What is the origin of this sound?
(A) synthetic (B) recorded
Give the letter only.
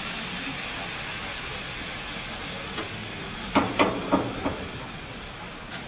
B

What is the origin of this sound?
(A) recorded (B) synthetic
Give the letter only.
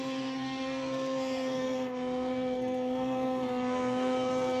B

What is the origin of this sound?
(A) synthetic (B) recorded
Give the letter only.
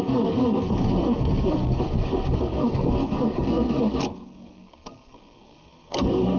A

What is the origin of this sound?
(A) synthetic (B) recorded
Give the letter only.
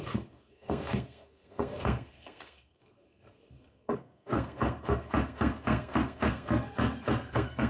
A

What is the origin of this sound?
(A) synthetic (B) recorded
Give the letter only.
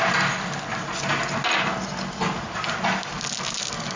B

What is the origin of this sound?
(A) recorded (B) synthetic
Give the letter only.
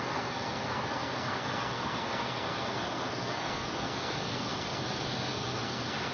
B